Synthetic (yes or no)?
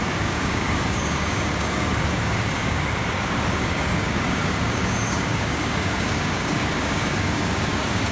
yes